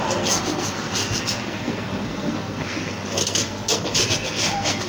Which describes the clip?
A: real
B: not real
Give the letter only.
B